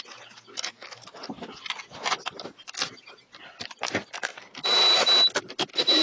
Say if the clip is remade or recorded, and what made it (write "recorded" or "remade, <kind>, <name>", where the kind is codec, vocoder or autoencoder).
recorded